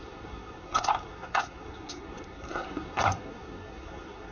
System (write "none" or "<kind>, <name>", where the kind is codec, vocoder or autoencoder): codec, SNAC